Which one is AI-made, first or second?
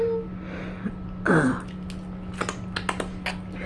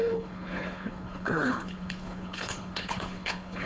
second